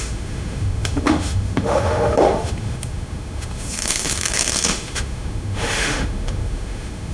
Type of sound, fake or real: fake